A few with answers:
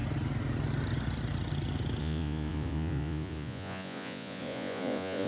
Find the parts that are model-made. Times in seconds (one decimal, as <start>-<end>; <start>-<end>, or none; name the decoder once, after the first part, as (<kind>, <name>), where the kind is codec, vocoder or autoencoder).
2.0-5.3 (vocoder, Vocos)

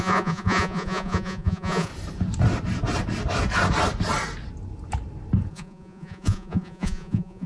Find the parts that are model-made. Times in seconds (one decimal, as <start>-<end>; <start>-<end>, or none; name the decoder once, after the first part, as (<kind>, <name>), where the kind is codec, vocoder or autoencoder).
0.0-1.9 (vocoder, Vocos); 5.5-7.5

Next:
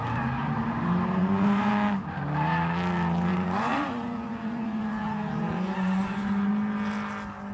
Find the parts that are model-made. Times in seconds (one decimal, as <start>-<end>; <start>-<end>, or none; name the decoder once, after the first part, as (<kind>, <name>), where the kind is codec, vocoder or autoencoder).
1.2-1.7 (vocoder, Vocos); 3.3-6.5

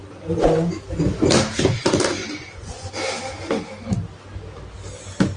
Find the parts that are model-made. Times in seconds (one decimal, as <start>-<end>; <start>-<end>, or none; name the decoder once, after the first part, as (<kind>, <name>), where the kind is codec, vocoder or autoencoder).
2.2-2.9 (vocoder, Vocos)

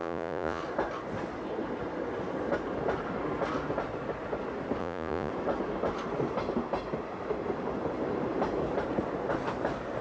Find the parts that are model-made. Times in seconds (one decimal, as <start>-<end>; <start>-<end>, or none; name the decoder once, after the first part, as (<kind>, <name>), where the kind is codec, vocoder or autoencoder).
0.0-0.6 (vocoder, Vocos); 4.8-5.3

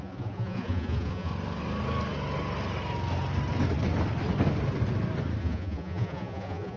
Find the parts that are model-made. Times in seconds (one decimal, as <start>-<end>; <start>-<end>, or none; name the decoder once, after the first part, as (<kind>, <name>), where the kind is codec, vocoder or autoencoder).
0.0-1.3 (vocoder, Vocos); 5.4-6.8

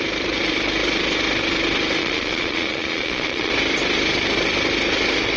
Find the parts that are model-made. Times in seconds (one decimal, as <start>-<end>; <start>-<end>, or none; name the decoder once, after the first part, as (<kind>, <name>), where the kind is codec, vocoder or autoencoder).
2.0-3.5 (vocoder, Vocos)